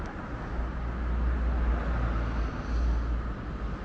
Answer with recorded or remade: recorded